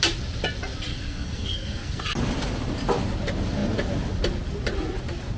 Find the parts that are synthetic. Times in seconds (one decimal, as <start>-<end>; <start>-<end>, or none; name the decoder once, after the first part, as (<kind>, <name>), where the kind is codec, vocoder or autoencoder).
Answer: 0.9-2.0 (codec, SNAC)